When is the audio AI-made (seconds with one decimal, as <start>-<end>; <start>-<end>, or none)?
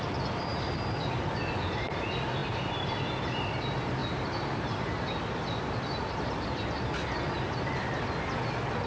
0.5-1.1; 4.0-5.0